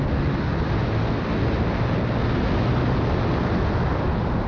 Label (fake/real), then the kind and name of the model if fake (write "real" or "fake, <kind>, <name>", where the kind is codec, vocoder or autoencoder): real